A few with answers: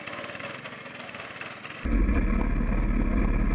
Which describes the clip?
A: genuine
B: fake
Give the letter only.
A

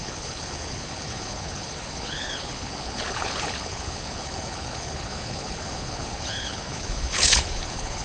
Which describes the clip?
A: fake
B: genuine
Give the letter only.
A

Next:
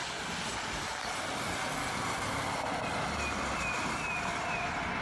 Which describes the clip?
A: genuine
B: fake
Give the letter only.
A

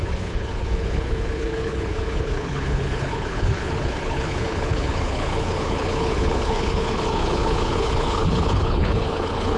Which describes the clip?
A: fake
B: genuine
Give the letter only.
A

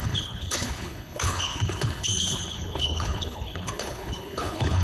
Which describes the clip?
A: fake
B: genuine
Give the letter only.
A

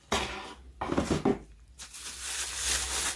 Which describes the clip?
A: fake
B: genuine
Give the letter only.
B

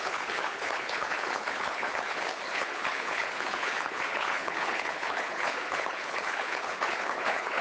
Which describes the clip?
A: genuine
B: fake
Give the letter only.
B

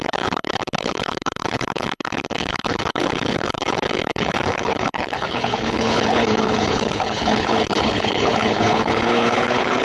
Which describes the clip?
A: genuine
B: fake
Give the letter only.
B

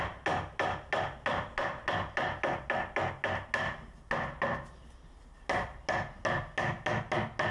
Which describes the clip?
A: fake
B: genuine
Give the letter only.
B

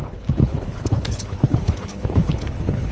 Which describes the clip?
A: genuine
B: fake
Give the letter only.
B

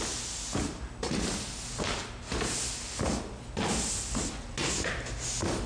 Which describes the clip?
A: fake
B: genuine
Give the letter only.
B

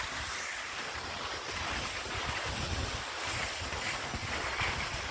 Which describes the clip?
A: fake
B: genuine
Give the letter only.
B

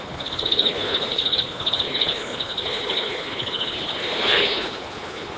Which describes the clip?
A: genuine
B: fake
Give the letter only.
B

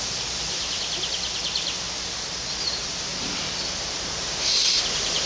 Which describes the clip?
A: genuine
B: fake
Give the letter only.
A